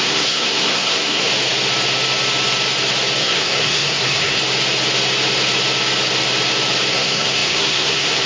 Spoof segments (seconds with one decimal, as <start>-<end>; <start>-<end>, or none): 0.0-1.3; 3.2-4.4; 6.9-8.3